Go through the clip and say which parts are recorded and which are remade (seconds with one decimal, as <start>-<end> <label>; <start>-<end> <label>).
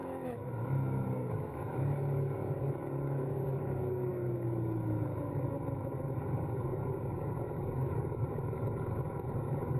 0.0-9.8 remade